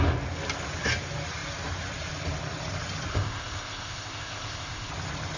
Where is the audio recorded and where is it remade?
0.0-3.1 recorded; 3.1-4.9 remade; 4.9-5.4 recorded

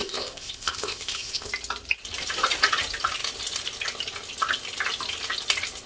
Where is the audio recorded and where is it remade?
0.0-1.5 remade; 1.5-5.9 recorded

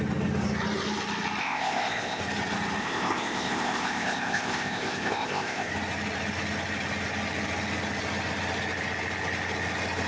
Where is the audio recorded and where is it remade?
0.0-1.4 recorded; 1.4-2.2 remade; 2.2-2.8 recorded; 2.8-5.7 remade; 5.7-10.1 recorded